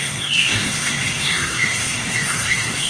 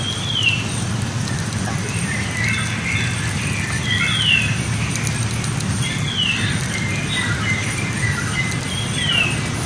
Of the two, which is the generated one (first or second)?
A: first